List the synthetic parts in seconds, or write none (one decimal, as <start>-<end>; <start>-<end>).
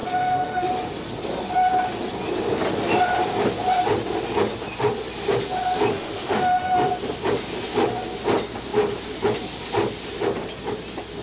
0.0-0.7; 5.9-6.9